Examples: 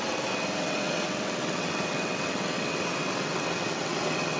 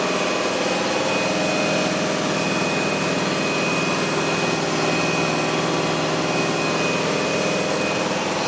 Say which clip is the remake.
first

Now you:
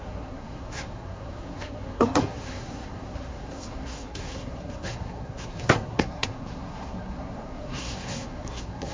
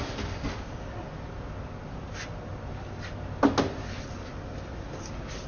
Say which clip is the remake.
first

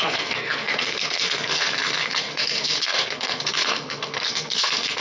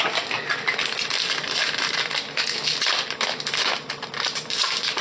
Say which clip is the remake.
first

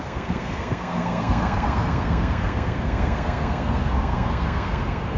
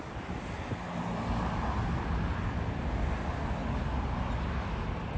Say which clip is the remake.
first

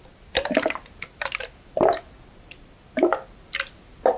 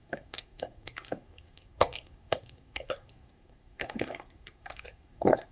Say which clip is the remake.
second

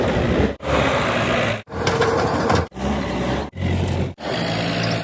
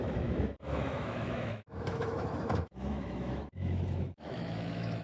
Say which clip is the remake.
second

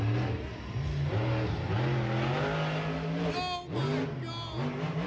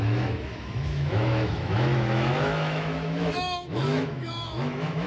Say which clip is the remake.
second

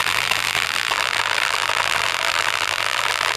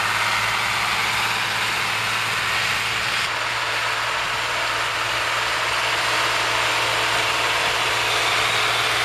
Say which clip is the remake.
first